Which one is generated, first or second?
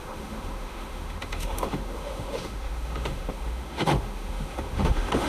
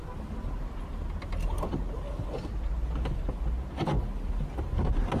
first